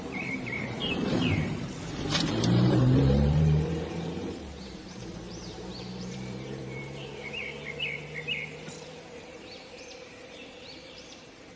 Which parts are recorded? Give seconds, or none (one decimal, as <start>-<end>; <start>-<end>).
7.1-9.1